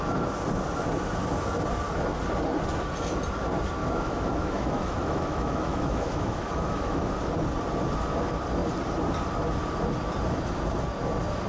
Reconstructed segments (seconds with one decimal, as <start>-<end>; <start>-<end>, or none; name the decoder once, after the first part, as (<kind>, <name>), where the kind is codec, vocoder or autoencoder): 3.8-7.0 (autoencoder, DAC-VAE)